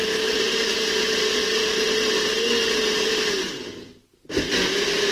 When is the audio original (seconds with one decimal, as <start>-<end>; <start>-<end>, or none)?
0.0-5.1